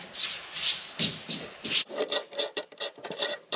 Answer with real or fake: real